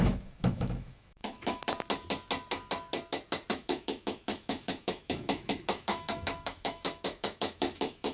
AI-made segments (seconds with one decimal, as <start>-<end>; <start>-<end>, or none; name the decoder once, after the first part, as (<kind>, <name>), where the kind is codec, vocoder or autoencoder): 0.0-1.6 (autoencoder, DAC-VAE); 3.5-8.1